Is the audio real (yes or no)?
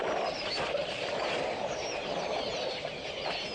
yes